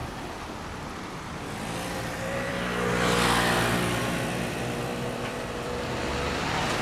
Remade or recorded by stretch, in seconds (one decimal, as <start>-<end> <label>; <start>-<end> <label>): 0.0-2.6 remade; 2.6-5.3 recorded; 5.3-5.9 remade; 5.9-6.8 recorded